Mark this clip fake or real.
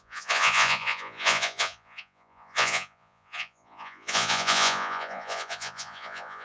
fake